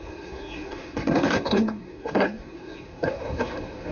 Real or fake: fake